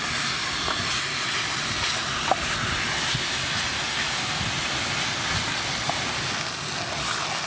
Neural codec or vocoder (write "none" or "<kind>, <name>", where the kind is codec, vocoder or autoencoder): none